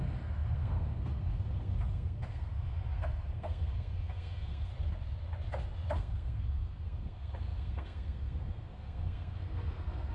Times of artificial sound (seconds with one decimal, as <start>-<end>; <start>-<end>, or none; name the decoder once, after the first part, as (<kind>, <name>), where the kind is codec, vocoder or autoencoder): 0.0-4.7 (codec, SNAC); 5.9-10.1